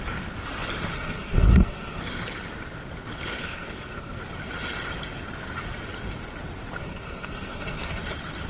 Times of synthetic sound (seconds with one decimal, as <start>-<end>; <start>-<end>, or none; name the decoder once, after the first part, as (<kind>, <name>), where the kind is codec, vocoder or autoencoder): 0.9-2.0 (codec, SNAC); 3.4-4.2; 6.8-8.0